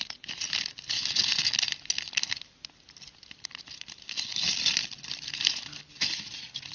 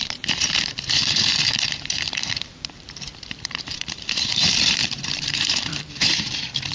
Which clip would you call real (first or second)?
first